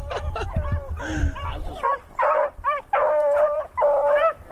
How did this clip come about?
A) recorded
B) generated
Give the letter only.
B